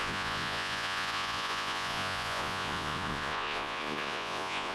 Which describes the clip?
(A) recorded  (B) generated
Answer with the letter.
B